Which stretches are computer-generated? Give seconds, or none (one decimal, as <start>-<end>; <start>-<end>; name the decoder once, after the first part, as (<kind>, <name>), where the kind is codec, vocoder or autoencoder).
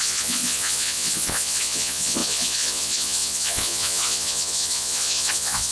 0.0-5.7 (vocoder, Vocos)